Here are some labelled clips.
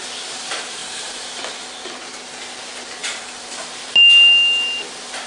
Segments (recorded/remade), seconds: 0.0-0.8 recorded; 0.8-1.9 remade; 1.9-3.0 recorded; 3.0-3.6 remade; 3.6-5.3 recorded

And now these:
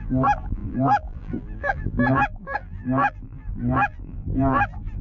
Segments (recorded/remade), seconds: 0.0-5.0 remade

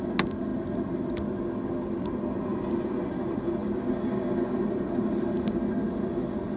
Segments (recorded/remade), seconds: 0.0-6.6 recorded

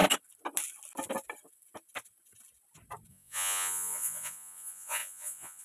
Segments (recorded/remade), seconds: 0.0-3.1 recorded; 3.1-5.6 remade

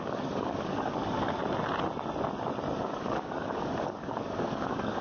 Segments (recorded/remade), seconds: 0.0-1.4 remade; 1.4-2.8 recorded; 2.8-5.0 remade

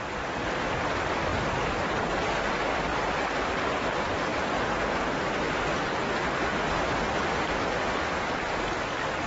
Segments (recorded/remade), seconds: 0.0-9.3 recorded

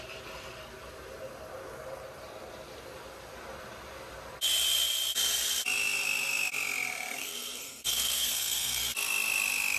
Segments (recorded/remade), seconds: 0.0-7.2 recorded; 7.2-8.8 remade; 8.8-9.8 recorded